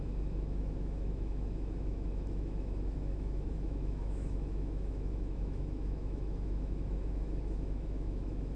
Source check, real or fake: fake